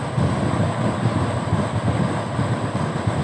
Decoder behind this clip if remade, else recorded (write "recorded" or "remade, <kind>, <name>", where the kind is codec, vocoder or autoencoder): remade, vocoder, BigVGAN v2